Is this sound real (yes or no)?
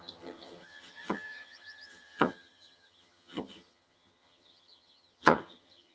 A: no